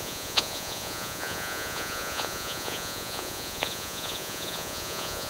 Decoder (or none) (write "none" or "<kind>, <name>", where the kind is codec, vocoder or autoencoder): vocoder, Vocos